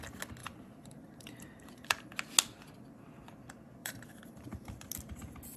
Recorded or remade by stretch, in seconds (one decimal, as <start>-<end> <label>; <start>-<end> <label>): 0.0-0.4 recorded; 0.4-2.1 remade; 2.1-3.8 recorded; 3.8-4.7 remade; 4.7-5.6 recorded

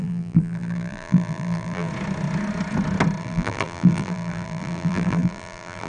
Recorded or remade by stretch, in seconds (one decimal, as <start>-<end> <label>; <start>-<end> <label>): 0.0-1.9 remade; 1.9-3.2 recorded; 3.2-5.9 remade

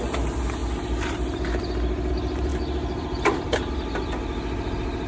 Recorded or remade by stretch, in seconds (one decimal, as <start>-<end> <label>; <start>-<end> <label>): 0.0-0.6 recorded; 0.6-2.1 remade; 2.1-2.5 recorded; 2.5-3.7 remade; 3.7-5.1 recorded